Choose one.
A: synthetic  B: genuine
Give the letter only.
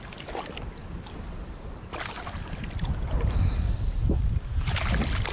B